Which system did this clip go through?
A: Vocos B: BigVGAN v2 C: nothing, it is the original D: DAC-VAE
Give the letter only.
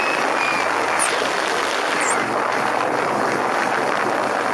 C